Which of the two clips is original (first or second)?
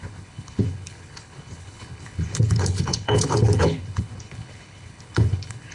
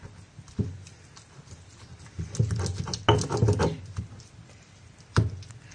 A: second